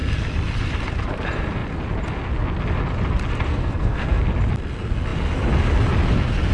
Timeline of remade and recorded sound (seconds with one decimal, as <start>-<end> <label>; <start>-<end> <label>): 0.0-3.5 recorded; 3.5-4.2 remade; 4.2-6.5 recorded